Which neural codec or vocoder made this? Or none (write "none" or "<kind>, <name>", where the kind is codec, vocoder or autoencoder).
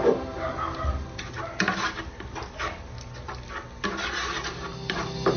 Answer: none